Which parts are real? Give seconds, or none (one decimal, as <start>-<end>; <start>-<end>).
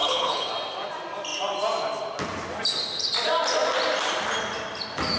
0.5-5.2